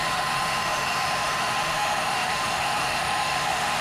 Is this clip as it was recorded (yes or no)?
no